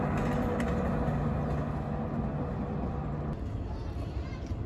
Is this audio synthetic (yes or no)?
no